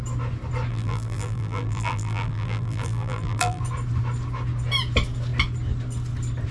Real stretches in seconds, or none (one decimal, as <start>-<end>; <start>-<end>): 0.0-0.7; 3.6-6.5